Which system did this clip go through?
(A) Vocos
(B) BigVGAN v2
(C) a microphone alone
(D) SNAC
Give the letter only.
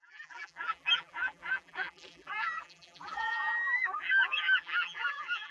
B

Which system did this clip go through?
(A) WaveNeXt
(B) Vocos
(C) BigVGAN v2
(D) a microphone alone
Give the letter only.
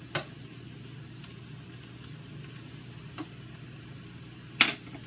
D